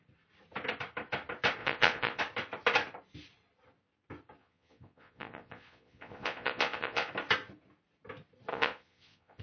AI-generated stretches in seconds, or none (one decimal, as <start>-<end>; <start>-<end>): 1.6-2.2; 4.4-7.1; 8.5-9.4